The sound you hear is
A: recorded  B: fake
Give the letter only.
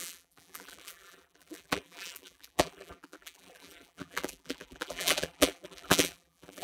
B